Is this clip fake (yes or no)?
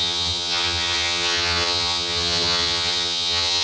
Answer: yes